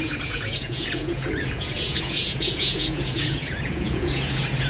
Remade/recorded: remade